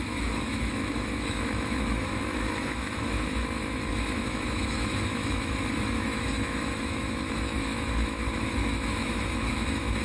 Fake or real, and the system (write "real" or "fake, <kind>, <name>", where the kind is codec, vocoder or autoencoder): fake, autoencoder, DAC-VAE